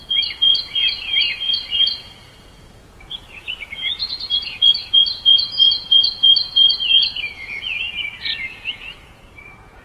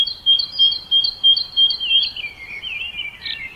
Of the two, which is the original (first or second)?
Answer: second